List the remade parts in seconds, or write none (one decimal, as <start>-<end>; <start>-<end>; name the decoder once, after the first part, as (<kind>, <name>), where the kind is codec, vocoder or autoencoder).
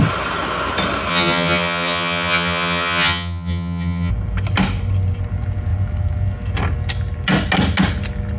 1.1-4.1 (vocoder, HiFi-GAN)